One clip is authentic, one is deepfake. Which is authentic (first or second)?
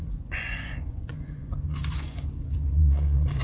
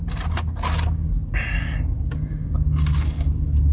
second